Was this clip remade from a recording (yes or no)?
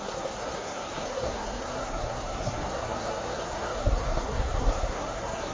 yes